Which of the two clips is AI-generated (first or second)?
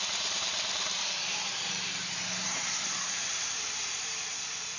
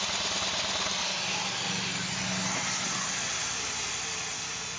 first